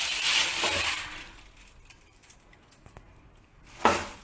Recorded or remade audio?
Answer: recorded